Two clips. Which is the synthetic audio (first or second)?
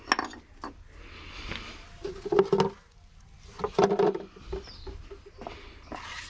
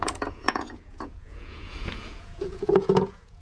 second